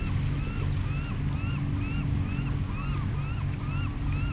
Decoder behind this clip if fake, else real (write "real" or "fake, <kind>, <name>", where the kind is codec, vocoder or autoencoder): real